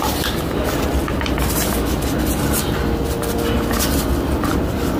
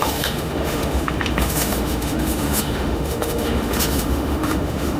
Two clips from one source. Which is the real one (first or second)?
first